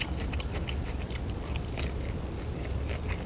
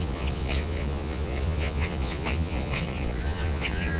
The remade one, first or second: second